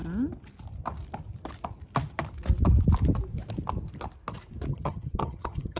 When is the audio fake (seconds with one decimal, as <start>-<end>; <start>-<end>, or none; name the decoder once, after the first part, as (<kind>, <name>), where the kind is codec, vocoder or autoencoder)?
4.7-5.8 (vocoder, HiFi-GAN)